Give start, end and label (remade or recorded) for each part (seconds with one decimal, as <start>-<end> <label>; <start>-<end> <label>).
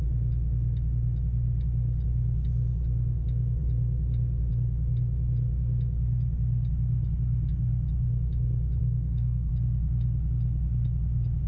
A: 0.0-8.8 recorded; 8.8-9.5 remade; 9.5-11.5 recorded